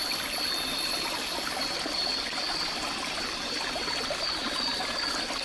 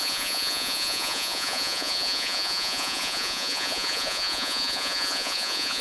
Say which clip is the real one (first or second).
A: first